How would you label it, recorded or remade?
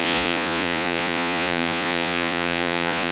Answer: remade